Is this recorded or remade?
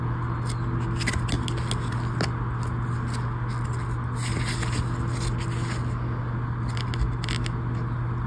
recorded